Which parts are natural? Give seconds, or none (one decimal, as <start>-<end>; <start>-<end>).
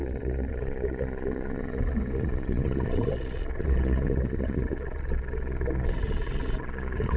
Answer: none